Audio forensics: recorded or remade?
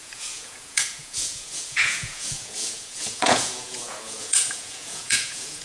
remade